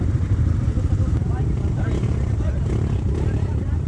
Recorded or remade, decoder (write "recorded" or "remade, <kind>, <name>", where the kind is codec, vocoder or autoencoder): remade, vocoder, BigVGAN v2